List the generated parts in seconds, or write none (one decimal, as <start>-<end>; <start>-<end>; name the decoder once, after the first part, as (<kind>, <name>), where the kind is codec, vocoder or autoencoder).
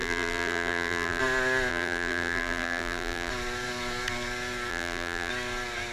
0.0-1.2 (vocoder, BigVGAN v2); 1.7-3.3; 4.7-5.3